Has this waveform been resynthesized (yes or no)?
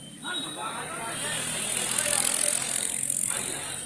no